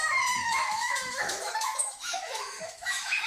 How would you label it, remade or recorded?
remade